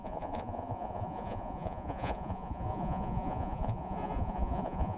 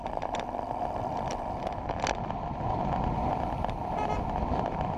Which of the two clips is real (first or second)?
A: second